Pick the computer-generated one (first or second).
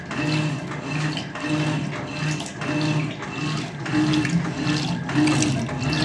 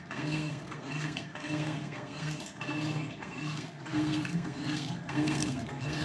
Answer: second